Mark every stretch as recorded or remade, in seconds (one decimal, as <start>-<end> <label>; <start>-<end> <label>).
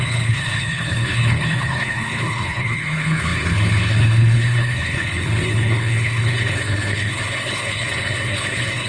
0.0-8.9 remade